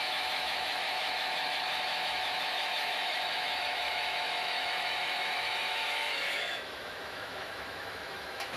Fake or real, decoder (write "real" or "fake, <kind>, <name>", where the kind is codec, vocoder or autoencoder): fake, autoencoder, DAC-VAE